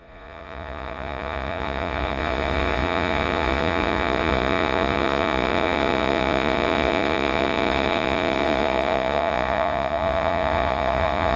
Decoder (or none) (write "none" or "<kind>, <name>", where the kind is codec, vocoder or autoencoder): vocoder, Vocos